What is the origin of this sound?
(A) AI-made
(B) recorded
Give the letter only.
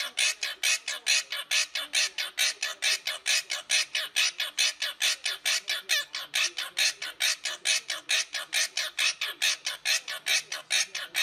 B